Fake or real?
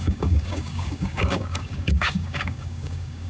fake